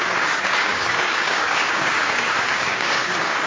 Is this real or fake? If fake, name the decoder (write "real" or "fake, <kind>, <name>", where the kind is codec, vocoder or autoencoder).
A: fake, codec, DAC